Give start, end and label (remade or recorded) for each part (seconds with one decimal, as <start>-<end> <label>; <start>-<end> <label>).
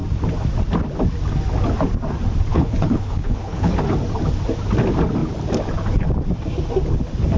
0.0-2.5 recorded; 2.5-3.7 remade; 3.7-7.4 recorded